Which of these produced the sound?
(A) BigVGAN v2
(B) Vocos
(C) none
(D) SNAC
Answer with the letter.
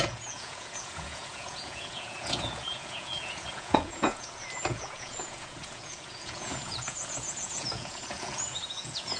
B